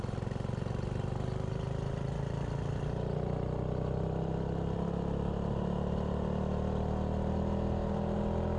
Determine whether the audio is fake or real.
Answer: real